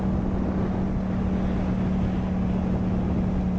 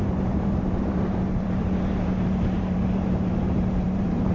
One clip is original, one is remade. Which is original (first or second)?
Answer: first